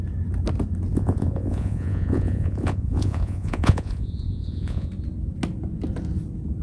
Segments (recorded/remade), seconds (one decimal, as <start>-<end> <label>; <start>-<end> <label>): 0.0-0.9 recorded; 0.9-4.9 remade; 4.9-6.6 recorded

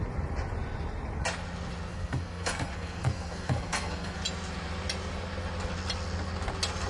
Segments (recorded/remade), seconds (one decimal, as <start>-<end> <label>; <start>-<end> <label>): 0.0-1.9 recorded; 1.9-4.2 remade; 4.2-6.9 recorded

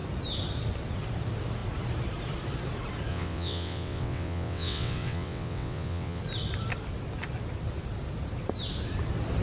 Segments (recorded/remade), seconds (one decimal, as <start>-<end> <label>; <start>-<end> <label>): 0.0-3.1 recorded; 3.1-6.2 remade; 6.2-9.4 recorded

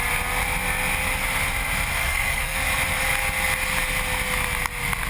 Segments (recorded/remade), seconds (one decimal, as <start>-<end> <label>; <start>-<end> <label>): 0.0-1.9 recorded; 1.9-2.6 remade; 2.6-5.1 recorded

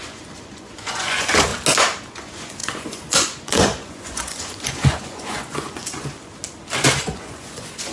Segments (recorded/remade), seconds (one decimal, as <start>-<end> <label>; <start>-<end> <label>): 0.0-1.5 remade; 1.5-2.1 recorded; 2.1-6.3 remade; 6.3-7.0 recorded; 7.0-7.9 remade

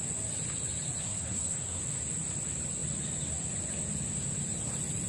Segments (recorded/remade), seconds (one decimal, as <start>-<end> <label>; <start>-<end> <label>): 0.0-1.0 recorded; 1.0-1.8 remade; 1.8-5.1 recorded

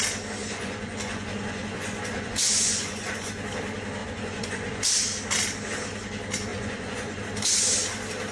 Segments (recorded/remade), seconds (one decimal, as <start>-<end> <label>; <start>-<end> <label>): 0.0-0.4 recorded; 0.4-3.3 remade; 3.3-4.0 recorded; 4.0-4.8 remade; 4.8-6.5 recorded; 6.5-7.2 remade; 7.2-8.3 recorded